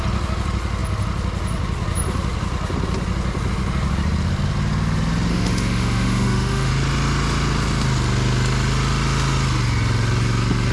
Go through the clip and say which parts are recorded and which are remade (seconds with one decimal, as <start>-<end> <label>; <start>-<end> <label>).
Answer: 0.0-5.3 recorded; 5.3-6.7 remade; 6.7-10.7 recorded